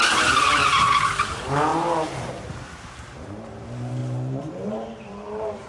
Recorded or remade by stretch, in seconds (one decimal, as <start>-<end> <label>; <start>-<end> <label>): 0.0-0.6 remade; 0.6-1.2 recorded; 1.2-1.7 remade; 1.7-2.5 recorded; 2.5-5.7 remade